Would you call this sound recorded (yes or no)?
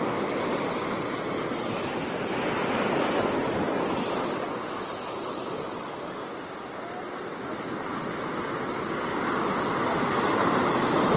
yes